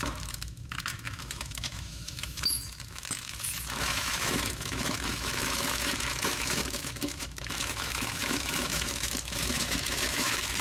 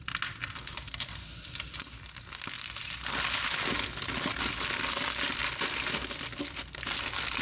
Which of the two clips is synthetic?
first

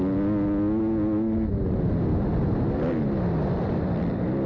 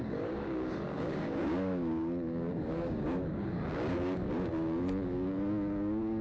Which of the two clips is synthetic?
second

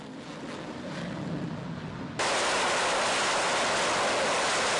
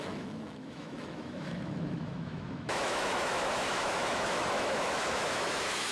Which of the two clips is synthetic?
second